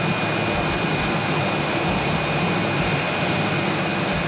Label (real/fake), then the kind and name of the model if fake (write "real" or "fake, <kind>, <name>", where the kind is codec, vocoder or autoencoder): real